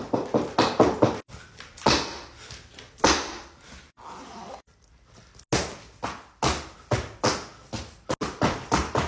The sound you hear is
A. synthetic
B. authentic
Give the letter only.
B